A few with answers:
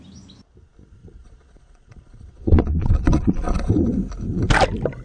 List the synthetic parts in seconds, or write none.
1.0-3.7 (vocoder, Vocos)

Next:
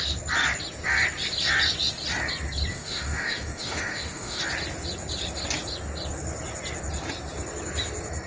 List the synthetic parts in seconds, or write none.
2.7-4.4 (autoencoder, DAC-VAE)

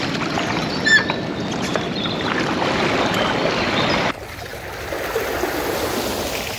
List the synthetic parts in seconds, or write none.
none

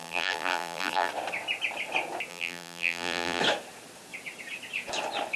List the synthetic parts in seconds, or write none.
0.0-1.1 (vocoder, BigVGAN v2); 2.3-3.4

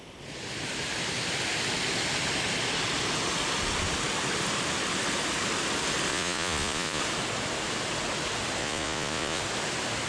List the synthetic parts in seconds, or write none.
6.1-7.0 (vocoder, Vocos); 8.6-9.4